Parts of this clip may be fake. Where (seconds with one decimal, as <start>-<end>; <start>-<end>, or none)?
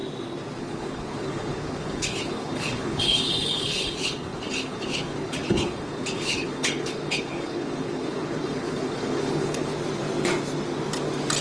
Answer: 0.6-9.7